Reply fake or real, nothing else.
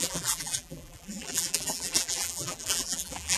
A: fake